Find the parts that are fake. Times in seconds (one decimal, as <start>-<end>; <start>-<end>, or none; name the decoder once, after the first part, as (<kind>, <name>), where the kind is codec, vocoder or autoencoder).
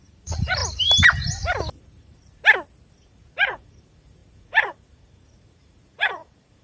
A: 0.0-0.6 (vocoder, Vocos); 1.7-2.4; 2.9-6.6